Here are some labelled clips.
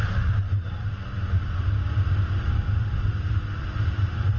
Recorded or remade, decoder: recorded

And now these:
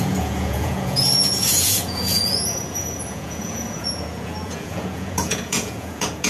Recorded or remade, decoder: remade, vocoder, Vocos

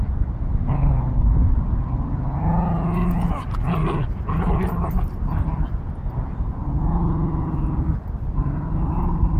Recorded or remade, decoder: recorded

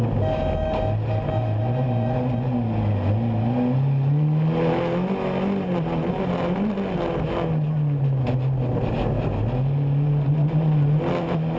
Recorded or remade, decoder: recorded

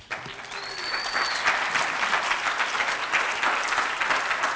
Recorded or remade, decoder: recorded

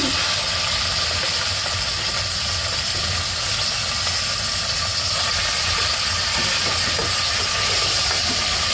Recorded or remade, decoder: recorded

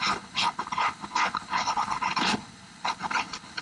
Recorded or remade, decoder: remade, codec, HILCodec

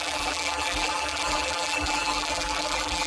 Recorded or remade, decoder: remade, vocoder, BigVGAN v2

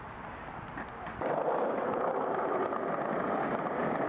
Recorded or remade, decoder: recorded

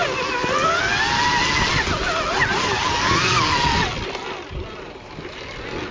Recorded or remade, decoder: recorded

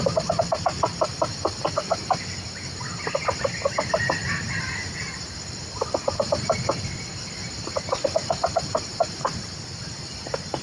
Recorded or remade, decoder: recorded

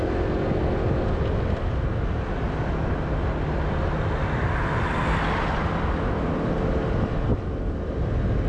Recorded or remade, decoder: recorded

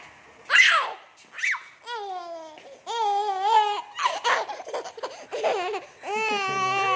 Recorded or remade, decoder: recorded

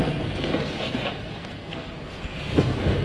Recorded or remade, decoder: remade, codec, SNAC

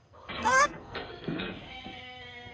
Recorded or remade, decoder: remade, codec, SNAC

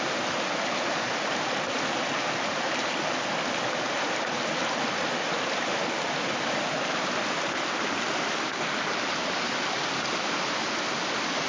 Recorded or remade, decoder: recorded